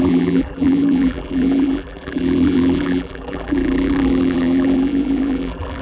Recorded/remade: remade